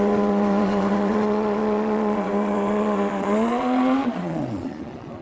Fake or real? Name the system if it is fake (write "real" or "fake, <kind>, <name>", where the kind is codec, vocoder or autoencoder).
fake, vocoder, Vocos